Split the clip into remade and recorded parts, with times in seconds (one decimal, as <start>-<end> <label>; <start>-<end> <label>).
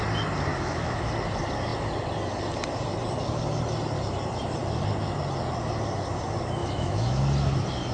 0.0-0.5 recorded; 0.5-1.1 remade; 1.1-6.6 recorded; 6.6-7.2 remade; 7.2-7.9 recorded